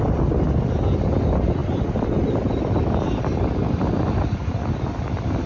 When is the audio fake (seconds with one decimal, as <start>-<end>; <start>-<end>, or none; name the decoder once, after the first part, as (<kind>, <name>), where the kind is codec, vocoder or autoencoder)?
none